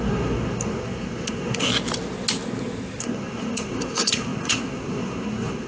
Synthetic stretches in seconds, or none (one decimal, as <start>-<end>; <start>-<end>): 0.0-1.7; 3.0-5.7